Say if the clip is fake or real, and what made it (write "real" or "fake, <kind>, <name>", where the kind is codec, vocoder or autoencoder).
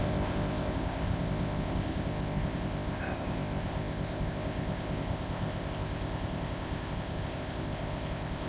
fake, codec, ZipCodec